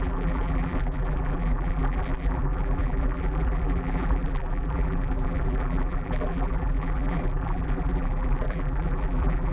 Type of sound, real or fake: fake